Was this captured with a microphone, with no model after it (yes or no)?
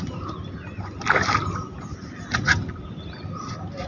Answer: yes